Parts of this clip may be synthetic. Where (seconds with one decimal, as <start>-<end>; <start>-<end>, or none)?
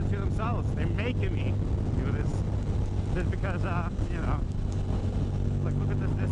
none